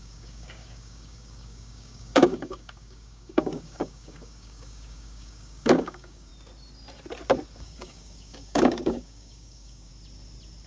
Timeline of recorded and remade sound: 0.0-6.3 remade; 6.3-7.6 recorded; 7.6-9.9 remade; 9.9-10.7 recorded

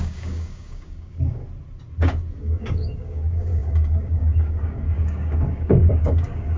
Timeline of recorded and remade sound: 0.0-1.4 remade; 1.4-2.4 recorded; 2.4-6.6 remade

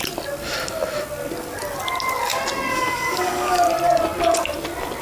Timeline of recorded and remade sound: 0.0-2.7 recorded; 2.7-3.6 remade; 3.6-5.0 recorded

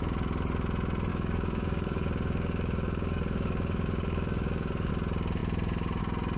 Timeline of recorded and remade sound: 0.0-1.1 recorded; 1.1-4.9 remade; 4.9-6.4 recorded